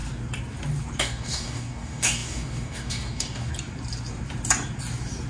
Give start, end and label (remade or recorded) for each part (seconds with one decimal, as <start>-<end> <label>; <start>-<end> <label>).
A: 0.0-1.0 recorded; 1.0-3.5 remade; 3.5-5.3 recorded